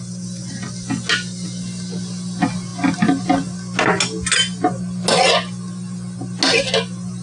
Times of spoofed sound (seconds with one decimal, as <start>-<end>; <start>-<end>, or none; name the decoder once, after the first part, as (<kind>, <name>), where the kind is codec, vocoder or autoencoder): none